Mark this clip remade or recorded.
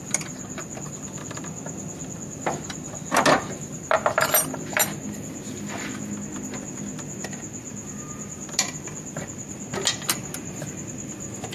recorded